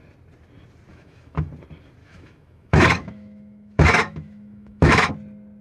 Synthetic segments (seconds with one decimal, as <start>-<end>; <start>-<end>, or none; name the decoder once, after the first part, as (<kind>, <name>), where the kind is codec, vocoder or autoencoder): 0.9-1.5 (autoencoder, DAC-VAE); 2.0-5.1